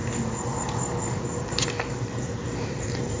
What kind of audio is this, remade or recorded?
recorded